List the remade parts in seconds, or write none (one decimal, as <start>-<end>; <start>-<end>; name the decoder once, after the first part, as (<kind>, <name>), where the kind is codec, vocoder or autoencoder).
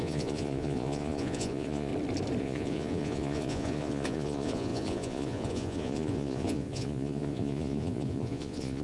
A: 0.0-1.9 (vocoder, Vocos); 2.4-8.8